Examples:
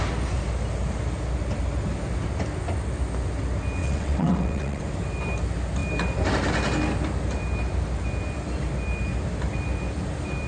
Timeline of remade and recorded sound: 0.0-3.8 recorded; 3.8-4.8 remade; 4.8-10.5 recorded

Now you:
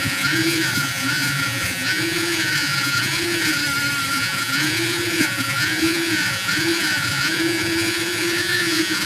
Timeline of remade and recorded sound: 0.0-3.6 remade; 3.6-4.1 recorded; 4.1-9.1 remade

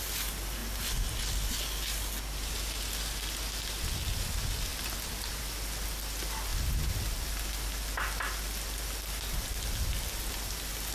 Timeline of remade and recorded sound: 0.0-0.6 recorded; 0.6-1.2 remade; 1.2-4.7 recorded; 4.7-5.4 remade; 5.4-6.5 recorded; 6.5-7.1 remade; 7.1-10.9 recorded

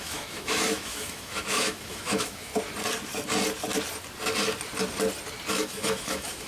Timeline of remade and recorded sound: 0.0-2.5 remade; 2.5-5.5 recorded; 5.5-6.5 remade

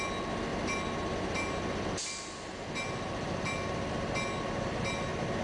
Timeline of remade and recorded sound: 0.0-5.4 recorded

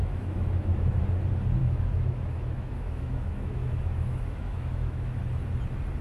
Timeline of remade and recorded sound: 0.0-1.0 remade; 1.0-1.6 recorded; 1.6-5.2 remade; 5.2-6.0 recorded